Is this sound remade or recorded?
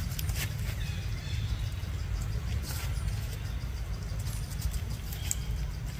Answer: recorded